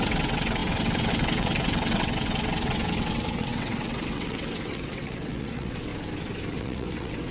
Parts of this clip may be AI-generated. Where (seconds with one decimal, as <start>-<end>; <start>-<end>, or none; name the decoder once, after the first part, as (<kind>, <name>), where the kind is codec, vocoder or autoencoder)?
0.0-5.9 (vocoder, WaveNeXt); 6.6-7.3